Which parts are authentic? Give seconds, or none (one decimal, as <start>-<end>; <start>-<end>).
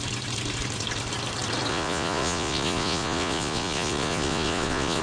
0.0-1.7